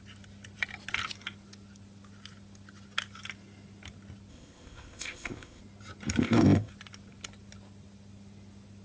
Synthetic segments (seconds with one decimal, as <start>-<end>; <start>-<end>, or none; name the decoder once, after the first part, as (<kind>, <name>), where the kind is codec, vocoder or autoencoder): 4.3-5.6 (codec, ZipCodec); 6.2-6.7